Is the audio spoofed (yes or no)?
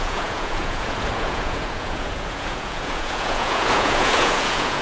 yes